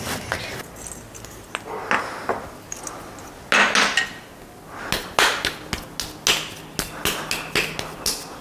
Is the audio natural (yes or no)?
yes